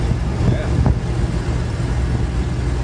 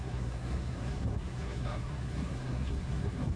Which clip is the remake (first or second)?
second